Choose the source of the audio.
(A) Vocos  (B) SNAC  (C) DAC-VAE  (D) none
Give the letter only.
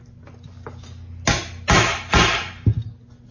D